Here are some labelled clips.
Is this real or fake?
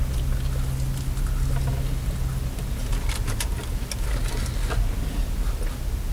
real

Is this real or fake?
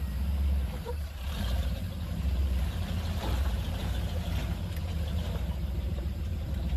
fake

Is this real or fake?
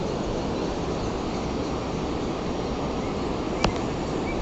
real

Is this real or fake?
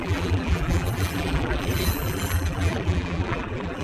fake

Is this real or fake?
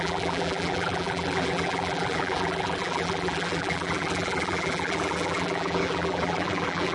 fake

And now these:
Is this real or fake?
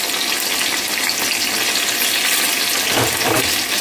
real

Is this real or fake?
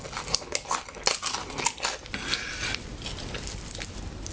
real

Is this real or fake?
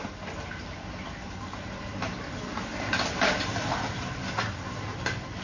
real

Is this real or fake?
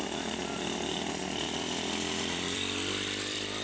fake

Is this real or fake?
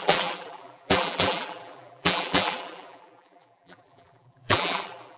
fake